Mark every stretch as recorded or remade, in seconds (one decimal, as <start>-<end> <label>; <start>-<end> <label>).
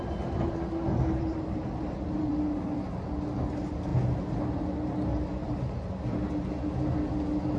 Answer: 0.0-0.9 recorded; 0.9-2.3 remade; 2.3-7.6 recorded